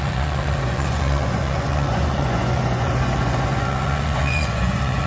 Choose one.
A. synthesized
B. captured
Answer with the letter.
A